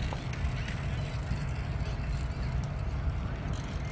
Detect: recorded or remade recorded